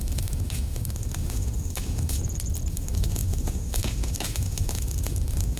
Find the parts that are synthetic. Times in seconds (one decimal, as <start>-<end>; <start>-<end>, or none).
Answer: 0.0-2.2; 2.7-5.6